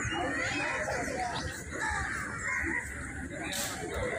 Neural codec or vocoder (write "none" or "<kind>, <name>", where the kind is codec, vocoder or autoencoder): none